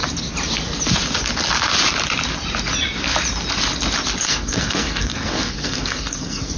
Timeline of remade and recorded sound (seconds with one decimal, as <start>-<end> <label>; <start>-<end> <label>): 0.0-4.2 recorded; 4.2-6.6 remade